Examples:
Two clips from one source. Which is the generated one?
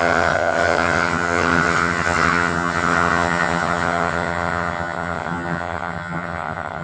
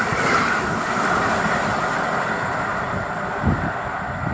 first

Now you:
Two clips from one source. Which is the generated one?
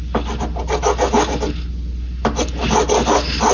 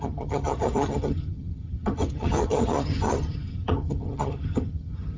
second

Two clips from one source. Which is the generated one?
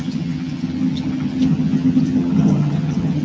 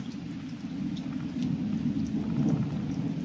first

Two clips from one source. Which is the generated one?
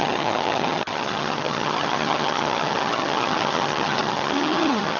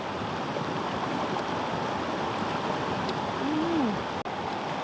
first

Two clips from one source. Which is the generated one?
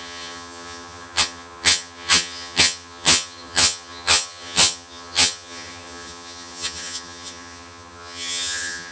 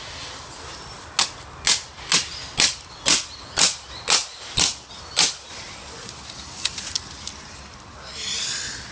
first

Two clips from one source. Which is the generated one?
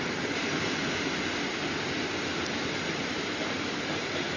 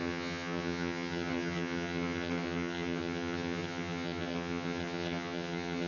second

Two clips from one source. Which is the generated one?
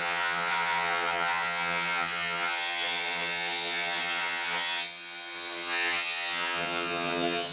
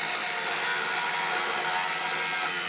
first